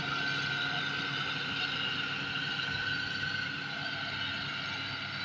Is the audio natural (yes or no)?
yes